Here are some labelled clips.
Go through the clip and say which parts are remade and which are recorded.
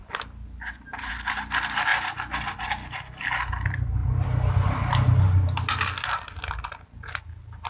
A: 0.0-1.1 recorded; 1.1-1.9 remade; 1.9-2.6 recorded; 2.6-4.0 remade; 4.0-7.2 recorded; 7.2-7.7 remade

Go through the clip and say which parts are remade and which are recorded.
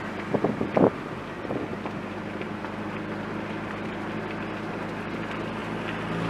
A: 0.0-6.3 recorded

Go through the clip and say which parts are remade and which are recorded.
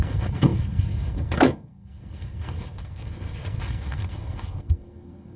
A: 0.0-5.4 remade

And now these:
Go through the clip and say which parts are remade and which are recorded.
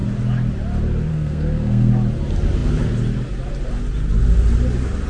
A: 0.0-1.1 recorded; 1.1-1.9 remade; 1.9-5.1 recorded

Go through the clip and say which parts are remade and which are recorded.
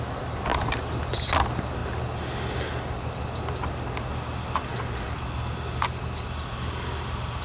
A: 0.0-7.4 recorded